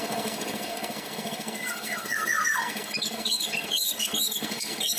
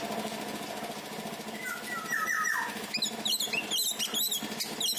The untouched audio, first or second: second